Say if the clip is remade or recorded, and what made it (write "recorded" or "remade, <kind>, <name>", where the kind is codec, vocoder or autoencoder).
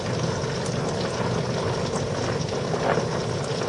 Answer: recorded